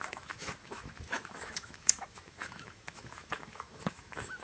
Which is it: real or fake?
fake